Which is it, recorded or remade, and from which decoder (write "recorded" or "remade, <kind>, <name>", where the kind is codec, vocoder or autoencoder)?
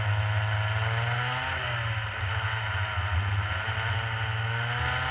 recorded